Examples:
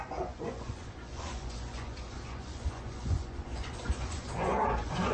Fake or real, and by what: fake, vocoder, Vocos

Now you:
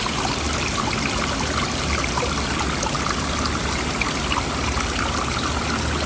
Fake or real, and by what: real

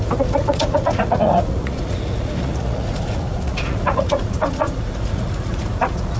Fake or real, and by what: fake, vocoder, Vocos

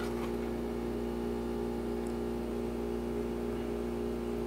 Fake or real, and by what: real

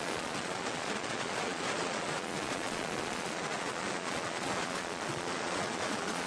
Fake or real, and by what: fake, vocoder, Vocos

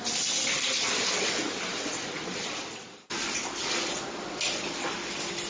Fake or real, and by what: real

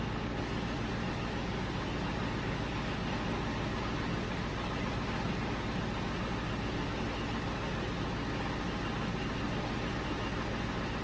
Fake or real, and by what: real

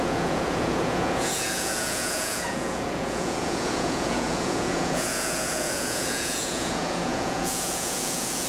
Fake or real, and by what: fake, vocoder, Vocos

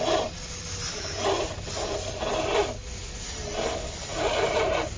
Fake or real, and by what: real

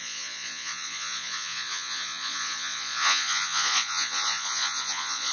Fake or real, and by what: fake, vocoder, Vocos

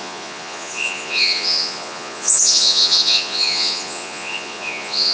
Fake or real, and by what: fake, vocoder, Vocos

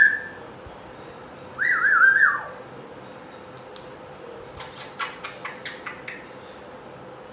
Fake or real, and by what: real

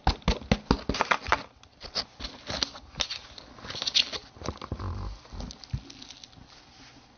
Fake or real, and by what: real